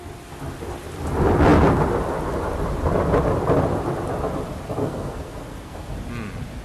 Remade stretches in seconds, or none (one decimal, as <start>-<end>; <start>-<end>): 4.8-5.9